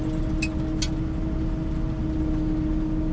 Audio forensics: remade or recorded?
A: recorded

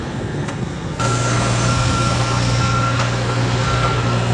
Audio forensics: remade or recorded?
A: remade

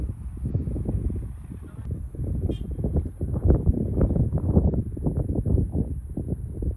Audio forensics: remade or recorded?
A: recorded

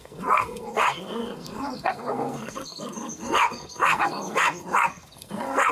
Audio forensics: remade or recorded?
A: remade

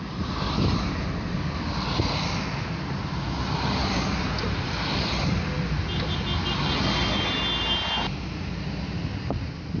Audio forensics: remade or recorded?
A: recorded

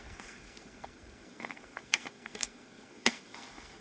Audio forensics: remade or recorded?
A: remade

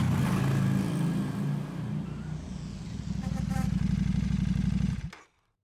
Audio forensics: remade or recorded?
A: recorded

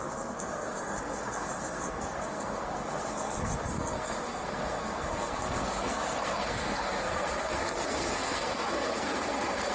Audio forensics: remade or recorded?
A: remade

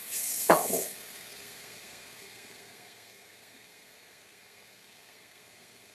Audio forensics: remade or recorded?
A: remade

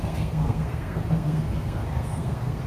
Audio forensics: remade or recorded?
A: remade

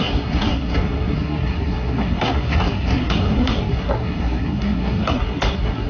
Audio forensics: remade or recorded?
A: remade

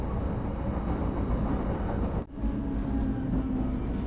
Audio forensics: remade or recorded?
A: recorded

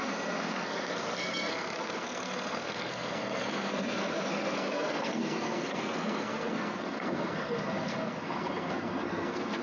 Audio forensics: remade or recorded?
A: remade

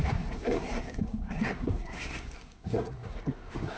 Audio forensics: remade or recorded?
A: remade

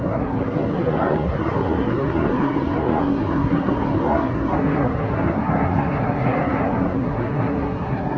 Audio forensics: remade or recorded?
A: remade